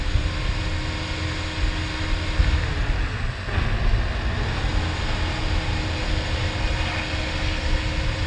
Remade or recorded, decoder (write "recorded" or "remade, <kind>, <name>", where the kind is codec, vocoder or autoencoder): recorded